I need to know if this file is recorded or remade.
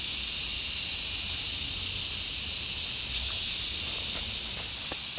recorded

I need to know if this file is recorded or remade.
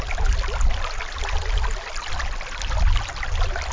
recorded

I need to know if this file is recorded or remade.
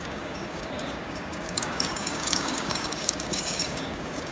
remade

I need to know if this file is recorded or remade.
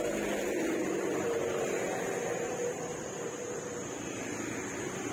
recorded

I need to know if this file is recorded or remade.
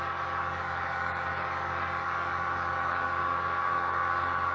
remade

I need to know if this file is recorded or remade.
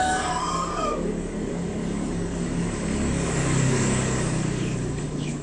remade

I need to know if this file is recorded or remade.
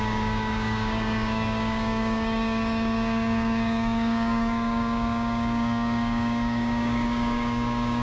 remade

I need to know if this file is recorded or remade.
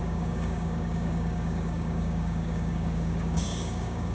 remade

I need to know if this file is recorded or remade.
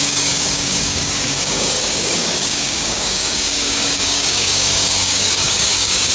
remade